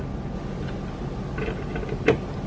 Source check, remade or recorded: recorded